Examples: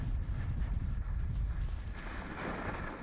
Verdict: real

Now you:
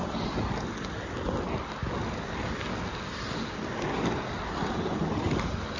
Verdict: real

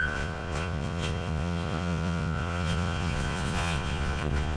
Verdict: fake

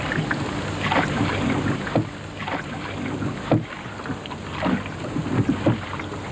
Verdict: real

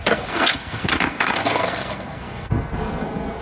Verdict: fake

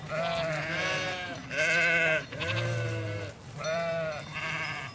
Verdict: fake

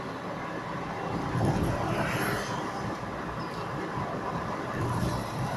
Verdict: real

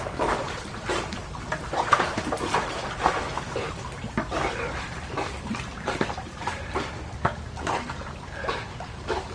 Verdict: fake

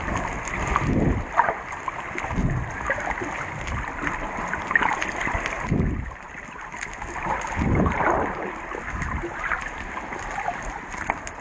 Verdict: real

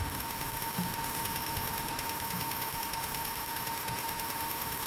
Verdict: fake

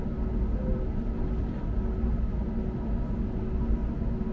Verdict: real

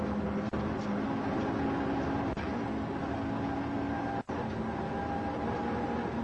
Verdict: real